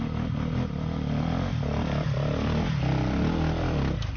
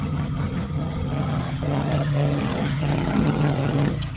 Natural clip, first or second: first